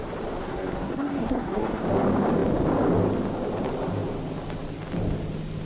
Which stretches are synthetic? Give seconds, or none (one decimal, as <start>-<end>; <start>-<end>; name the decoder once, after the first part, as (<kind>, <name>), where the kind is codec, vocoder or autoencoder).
0.4-1.8 (codec, SNAC)